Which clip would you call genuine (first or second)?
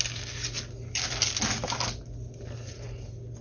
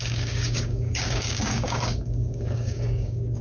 first